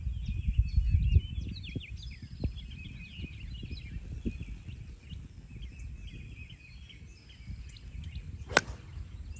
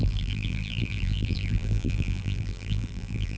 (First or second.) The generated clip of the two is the second